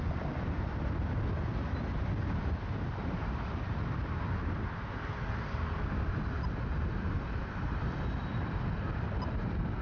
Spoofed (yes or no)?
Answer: no